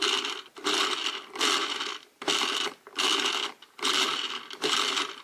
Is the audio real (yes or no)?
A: yes